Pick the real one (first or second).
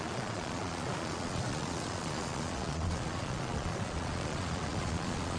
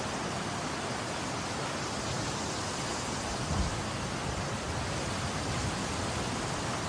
second